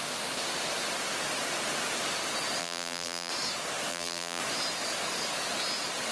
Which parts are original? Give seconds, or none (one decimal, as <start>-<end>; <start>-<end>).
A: 0.0-2.6; 3.3-3.9; 4.4-6.1